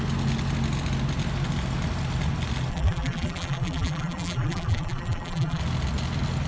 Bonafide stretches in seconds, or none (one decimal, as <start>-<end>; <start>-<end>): 0.0-2.7; 5.6-6.5